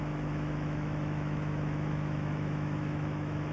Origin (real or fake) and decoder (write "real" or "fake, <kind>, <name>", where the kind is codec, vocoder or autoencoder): fake, autoencoder, DAC-VAE